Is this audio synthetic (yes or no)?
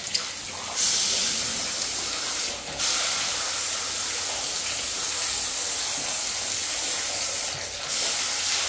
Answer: no